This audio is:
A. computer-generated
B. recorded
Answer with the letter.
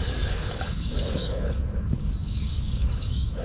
A